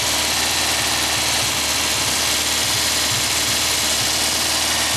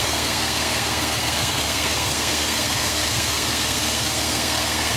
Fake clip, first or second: second